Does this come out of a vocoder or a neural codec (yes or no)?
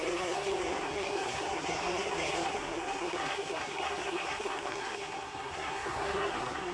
yes